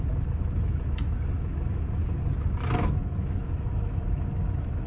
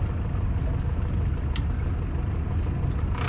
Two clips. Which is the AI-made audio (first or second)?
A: first